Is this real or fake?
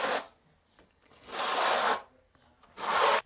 real